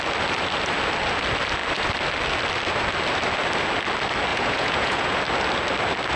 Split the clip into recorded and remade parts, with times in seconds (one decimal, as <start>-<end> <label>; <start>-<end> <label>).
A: 0.0-4.3 recorded; 4.3-5.2 remade; 5.2-6.2 recorded